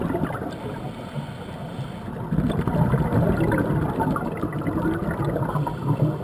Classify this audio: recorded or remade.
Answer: recorded